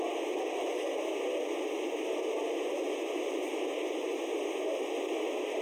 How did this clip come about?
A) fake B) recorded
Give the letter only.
B